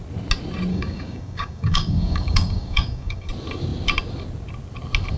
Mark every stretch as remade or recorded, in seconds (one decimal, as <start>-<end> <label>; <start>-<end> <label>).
0.0-0.7 recorded; 0.7-3.3 remade; 3.3-5.2 recorded